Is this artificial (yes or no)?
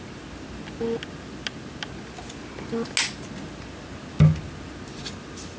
no